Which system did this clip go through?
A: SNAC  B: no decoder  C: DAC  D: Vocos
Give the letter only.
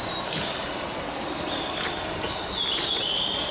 B